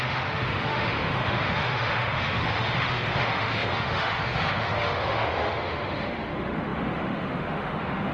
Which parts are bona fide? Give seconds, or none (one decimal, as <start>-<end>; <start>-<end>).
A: none